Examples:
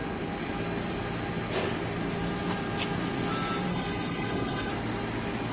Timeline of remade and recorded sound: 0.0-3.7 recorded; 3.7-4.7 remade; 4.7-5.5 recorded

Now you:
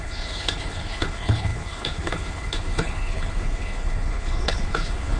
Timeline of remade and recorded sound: 0.0-5.2 remade

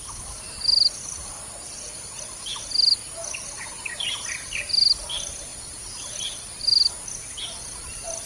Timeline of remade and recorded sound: 0.0-8.3 recorded

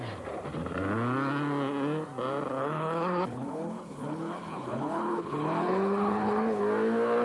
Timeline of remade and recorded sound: 0.0-2.6 recorded; 2.6-6.6 remade; 6.6-7.2 recorded

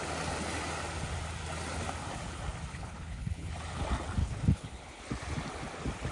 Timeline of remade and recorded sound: 0.0-2.7 recorded; 2.7-3.5 remade; 3.5-4.2 recorded; 4.2-5.0 remade; 5.0-6.1 recorded

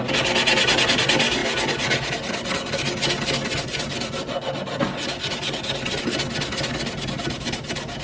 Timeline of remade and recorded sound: 0.0-8.0 recorded

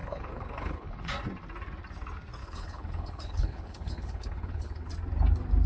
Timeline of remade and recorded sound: 0.0-1.1 remade; 1.1-2.4 recorded; 2.4-4.9 remade; 4.9-5.7 recorded